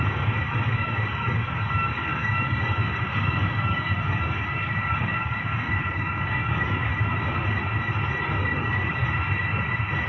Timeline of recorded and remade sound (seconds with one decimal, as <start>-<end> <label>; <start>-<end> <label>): 0.0-6.9 remade; 6.9-8.3 recorded; 8.3-9.0 remade; 9.0-10.1 recorded